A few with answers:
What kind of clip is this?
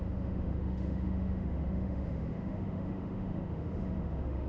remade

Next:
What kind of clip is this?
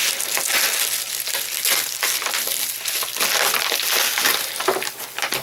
recorded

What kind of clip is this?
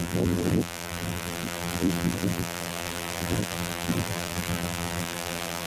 remade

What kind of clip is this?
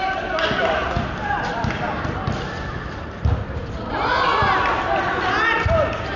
recorded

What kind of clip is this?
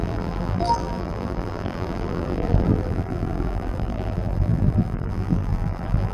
remade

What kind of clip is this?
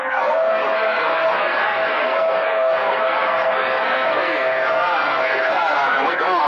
remade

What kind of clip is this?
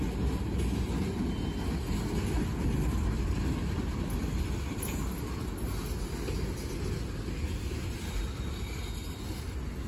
recorded